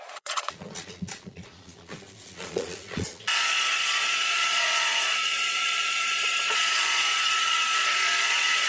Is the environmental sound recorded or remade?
remade